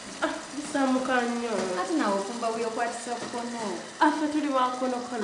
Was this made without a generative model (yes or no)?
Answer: yes